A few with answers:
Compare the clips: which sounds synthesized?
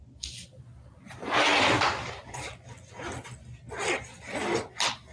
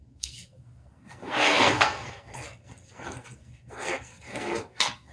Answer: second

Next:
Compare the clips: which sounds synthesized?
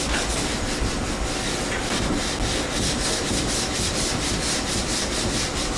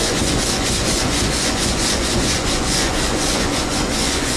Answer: second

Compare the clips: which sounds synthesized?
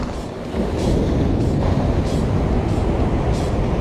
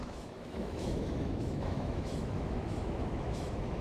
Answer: second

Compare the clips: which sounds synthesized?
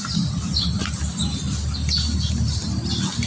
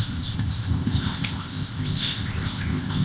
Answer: second